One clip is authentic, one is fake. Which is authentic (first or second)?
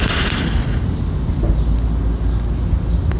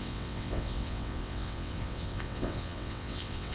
first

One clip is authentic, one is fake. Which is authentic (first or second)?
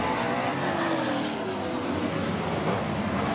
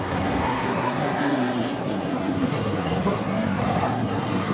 first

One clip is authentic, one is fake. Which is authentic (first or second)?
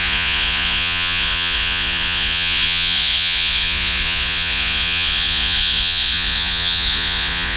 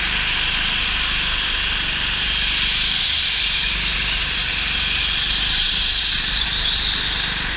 second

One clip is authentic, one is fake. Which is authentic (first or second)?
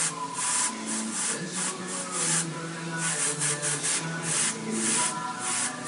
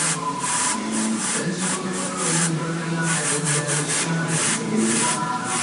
first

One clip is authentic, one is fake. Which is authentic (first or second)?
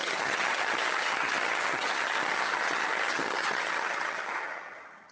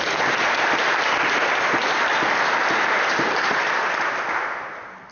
second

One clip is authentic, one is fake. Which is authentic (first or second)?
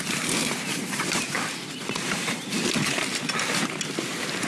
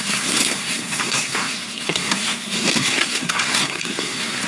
first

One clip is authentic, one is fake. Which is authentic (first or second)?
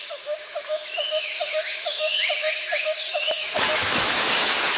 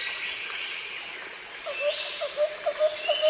second